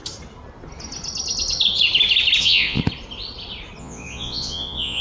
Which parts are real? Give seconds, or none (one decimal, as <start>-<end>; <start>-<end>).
0.0-2.4; 2.8-3.8